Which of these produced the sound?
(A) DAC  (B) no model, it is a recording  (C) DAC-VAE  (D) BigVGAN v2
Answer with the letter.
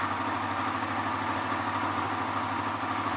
B